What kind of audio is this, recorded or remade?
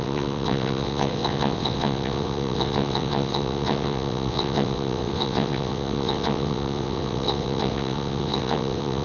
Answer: remade